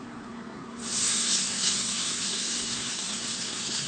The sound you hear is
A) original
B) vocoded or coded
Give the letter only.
B